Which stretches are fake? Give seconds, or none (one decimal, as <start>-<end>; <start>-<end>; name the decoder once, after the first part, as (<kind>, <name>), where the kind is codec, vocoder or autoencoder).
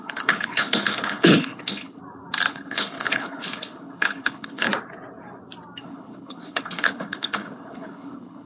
0.0-2.0 (codec, HILCodec); 2.5-4.7; 5.8-8.5